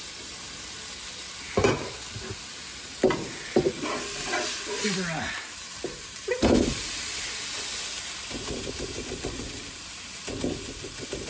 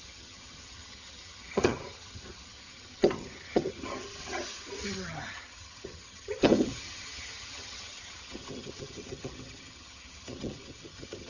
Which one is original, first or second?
first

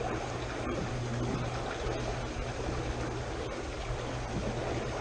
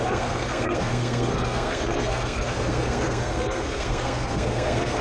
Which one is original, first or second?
first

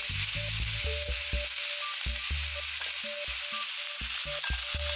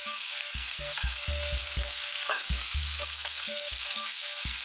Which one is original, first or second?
first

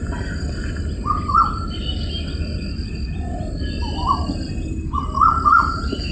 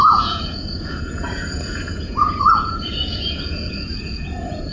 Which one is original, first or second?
first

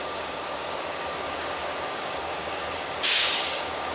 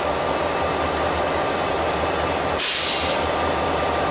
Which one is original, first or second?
second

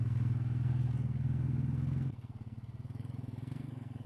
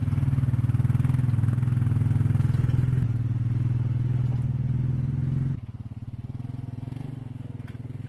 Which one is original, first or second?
second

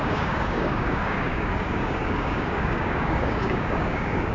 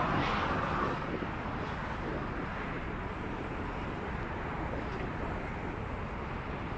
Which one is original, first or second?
second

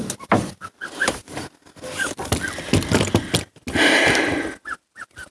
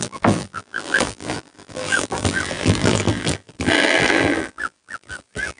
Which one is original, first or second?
first